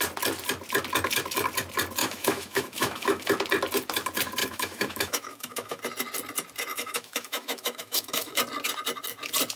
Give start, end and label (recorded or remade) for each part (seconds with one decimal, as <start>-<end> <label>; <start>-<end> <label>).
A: 0.0-2.0 recorded; 2.0-3.3 remade; 3.3-4.4 recorded; 4.4-5.8 remade; 5.8-6.7 recorded; 6.7-8.4 remade; 8.4-9.6 recorded